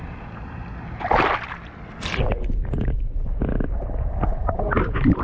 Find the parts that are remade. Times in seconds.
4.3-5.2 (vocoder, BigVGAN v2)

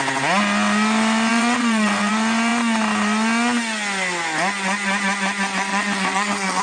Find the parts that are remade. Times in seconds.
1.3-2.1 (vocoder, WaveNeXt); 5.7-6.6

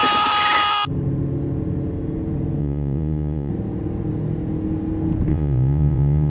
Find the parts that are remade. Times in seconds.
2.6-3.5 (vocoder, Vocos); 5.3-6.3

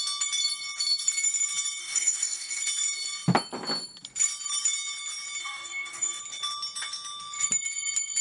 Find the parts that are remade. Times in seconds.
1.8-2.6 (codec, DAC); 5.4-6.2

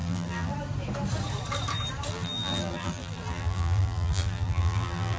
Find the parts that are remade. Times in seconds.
0.0-0.5 (vocoder, BigVGAN v2); 2.1-5.2